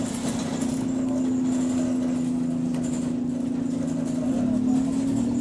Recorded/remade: recorded